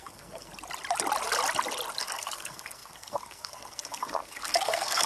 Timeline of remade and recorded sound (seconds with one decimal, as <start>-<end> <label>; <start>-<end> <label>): 0.0-0.5 remade; 0.5-2.0 recorded; 2.0-5.1 remade